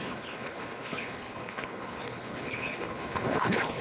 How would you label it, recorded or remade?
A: remade